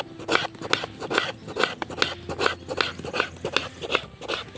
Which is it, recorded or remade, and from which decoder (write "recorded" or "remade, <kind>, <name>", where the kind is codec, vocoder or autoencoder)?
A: recorded